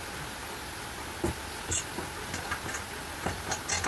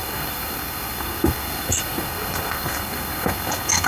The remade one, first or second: second